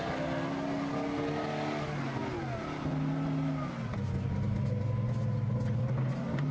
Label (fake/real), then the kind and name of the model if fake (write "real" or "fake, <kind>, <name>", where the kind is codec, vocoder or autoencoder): real